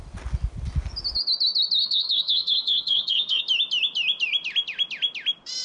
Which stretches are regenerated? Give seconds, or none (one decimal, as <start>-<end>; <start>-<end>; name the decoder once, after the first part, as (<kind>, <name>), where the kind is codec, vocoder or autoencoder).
1.8-3.4 (codec, SNAC)